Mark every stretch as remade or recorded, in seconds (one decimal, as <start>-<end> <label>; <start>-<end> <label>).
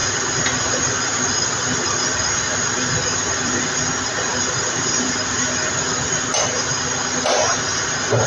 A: 0.0-4.3 recorded; 4.3-5.2 remade; 5.2-8.3 recorded